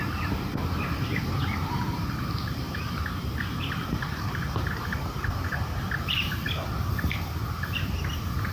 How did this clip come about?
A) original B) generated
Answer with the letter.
B